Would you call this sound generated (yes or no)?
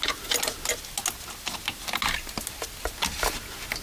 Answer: no